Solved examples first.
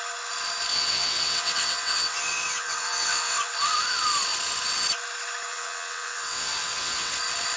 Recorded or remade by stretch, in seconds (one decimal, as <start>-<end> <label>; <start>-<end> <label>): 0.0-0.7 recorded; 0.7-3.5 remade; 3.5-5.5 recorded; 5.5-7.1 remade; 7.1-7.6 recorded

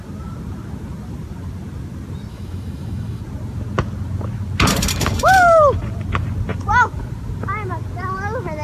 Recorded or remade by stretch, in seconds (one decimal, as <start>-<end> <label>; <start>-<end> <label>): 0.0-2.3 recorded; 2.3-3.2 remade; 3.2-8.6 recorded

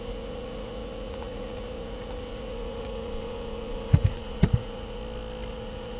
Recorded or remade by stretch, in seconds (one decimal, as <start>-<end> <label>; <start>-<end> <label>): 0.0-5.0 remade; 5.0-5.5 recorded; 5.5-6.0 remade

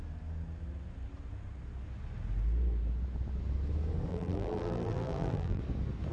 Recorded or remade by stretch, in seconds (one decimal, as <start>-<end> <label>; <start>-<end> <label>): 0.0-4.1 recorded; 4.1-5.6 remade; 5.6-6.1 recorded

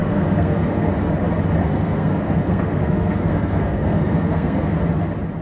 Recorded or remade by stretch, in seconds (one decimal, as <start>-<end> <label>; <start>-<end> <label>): 0.0-0.9 remade; 0.9-1.6 recorded; 1.6-4.8 remade; 4.8-5.4 recorded

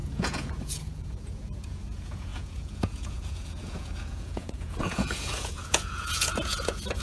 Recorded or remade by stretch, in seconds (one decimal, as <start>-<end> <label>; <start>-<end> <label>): 0.0-7.0 remade

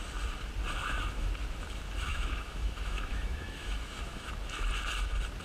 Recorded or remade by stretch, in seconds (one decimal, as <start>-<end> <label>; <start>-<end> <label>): 0.0-0.8 recorded; 0.8-1.3 remade; 1.3-2.1 recorded; 2.1-4.3 remade; 4.3-5.4 recorded

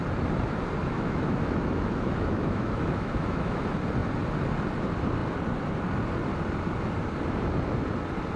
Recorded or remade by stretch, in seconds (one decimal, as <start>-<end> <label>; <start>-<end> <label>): 0.0-0.8 recorded; 0.8-3.6 remade; 3.6-8.4 recorded